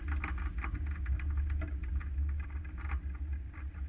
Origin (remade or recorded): recorded